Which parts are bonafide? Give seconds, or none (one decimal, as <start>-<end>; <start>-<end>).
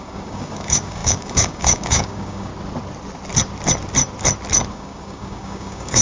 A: 2.5-4.7